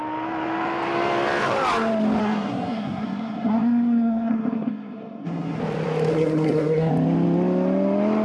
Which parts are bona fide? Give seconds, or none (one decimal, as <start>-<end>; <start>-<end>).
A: 0.0-2.2; 5.6-6.1; 6.9-8.2